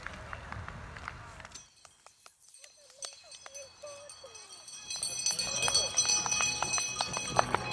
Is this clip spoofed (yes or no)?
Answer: no